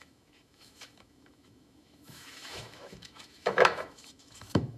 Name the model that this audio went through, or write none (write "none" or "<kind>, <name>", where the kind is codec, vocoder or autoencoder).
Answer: autoencoder, DAC-VAE